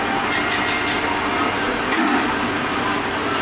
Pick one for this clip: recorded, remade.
recorded